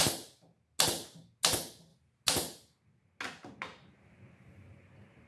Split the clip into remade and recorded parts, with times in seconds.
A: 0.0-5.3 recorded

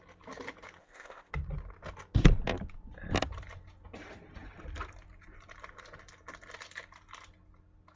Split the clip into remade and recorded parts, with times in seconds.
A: 0.0-0.8 recorded; 0.8-1.3 remade; 1.3-8.0 recorded

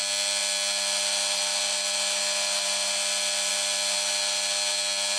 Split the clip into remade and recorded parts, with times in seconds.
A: 0.0-5.2 recorded

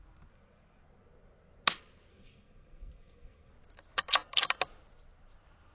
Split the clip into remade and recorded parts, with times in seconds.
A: 0.0-2.1 recorded; 2.1-3.5 remade; 3.5-5.7 recorded

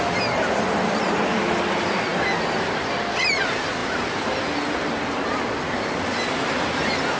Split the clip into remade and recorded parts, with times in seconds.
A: 0.0-3.8 recorded; 3.8-4.4 remade; 4.4-7.2 recorded